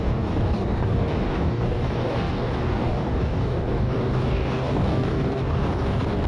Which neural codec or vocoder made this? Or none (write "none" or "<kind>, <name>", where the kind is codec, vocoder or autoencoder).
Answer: codec, DAC